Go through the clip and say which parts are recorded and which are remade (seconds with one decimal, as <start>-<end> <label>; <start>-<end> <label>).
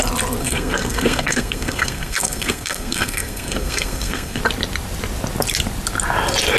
0.0-0.4 recorded; 0.4-4.4 remade; 4.4-6.6 recorded